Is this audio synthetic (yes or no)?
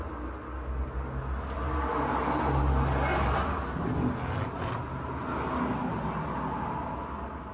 no